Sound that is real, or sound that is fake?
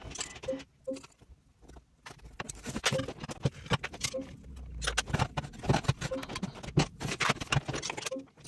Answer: real